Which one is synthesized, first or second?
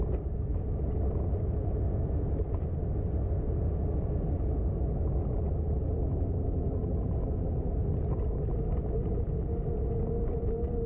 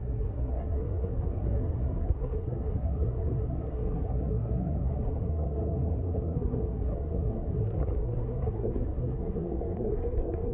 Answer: second